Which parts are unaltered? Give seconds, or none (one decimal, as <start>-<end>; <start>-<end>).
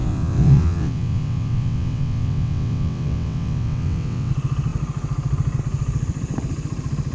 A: 4.3-7.1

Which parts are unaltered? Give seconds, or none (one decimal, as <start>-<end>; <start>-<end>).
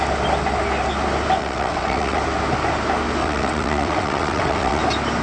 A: 0.0-1.4; 2.2-3.2; 4.8-5.2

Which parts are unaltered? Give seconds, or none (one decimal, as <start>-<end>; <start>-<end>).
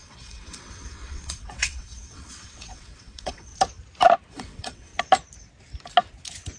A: 3.5-4.3; 4.9-6.6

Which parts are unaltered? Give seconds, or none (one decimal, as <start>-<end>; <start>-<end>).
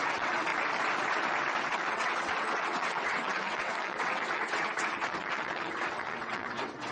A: 0.5-1.6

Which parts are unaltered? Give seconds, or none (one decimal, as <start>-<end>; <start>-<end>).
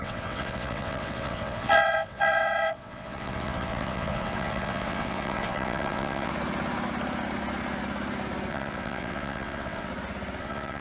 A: 6.3-8.5; 9.9-10.4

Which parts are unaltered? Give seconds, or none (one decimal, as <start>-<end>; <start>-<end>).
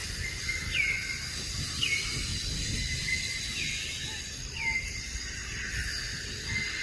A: 0.0-6.8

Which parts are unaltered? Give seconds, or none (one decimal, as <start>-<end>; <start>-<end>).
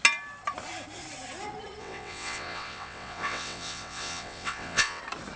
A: 0.0-1.8; 5.0-5.4